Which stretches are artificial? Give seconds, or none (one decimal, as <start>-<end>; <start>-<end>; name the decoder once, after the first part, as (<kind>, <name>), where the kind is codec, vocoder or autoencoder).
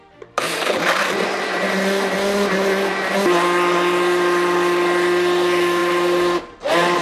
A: none